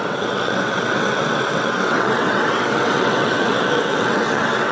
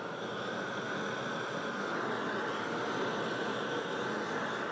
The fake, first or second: first